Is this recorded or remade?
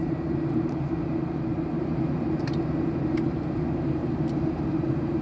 remade